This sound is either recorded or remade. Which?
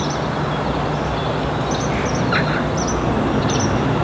recorded